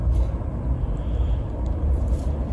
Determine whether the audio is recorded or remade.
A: remade